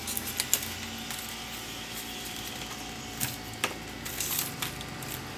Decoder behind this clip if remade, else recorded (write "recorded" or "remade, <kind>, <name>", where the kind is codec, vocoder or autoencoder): recorded